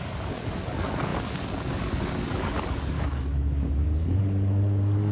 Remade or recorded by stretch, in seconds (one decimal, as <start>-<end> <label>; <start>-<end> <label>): 0.0-5.1 remade